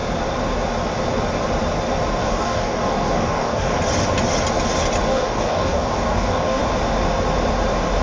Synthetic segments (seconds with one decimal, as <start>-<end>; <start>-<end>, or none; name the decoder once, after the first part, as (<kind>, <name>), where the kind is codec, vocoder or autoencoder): 2.2-3.8 (codec, DAC); 5.1-6.6